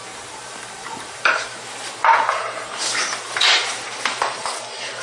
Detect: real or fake fake